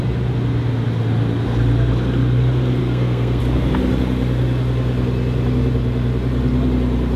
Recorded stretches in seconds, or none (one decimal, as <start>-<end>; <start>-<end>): 0.0-2.8; 3.4-7.2